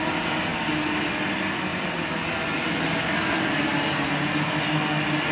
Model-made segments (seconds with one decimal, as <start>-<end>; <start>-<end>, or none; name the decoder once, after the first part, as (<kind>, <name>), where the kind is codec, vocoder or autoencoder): none